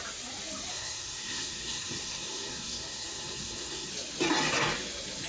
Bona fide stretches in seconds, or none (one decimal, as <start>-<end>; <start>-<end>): 0.0-0.7; 3.9-5.3